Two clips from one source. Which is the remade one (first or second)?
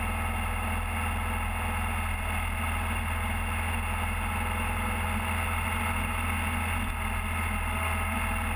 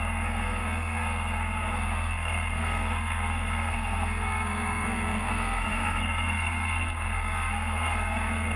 second